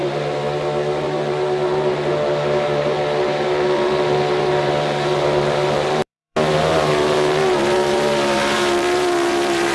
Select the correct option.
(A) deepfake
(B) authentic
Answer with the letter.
A